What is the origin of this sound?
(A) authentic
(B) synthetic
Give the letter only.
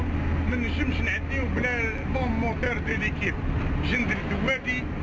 A